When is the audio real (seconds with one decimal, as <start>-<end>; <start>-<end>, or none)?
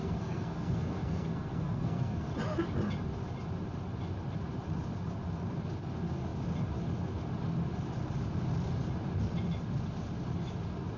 2.3-11.0